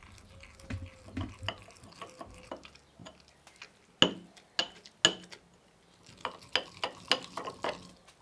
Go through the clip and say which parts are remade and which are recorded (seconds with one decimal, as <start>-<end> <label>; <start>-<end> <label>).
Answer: 0.0-8.2 recorded